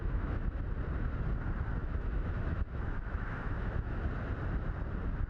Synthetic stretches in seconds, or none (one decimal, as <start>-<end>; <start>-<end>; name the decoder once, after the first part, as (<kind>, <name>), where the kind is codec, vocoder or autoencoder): 0.0-0.6 (autoencoder, DAC-VAE); 1.8-4.0